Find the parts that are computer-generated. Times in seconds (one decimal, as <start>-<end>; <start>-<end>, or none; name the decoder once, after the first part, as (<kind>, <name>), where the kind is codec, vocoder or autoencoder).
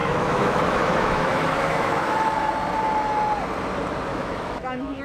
0.0-2.5 (autoencoder, DAC-VAE); 4.1-5.0